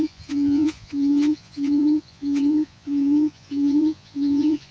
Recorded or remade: remade